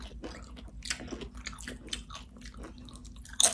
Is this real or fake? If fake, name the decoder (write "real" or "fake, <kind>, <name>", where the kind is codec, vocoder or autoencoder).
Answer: real